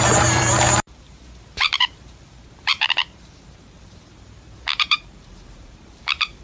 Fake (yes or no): yes